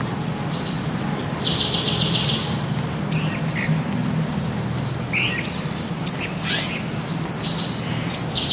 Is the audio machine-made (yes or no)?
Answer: no